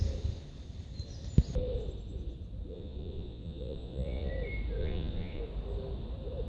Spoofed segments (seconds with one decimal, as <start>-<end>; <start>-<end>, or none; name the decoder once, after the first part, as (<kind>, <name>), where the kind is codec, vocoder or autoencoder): 2.7-4.3 (vocoder, Vocos); 4.8-5.4